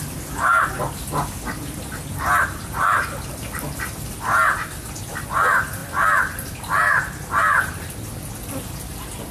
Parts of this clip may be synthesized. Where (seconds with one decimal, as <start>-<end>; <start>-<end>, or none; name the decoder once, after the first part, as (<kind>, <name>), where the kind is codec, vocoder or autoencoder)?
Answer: none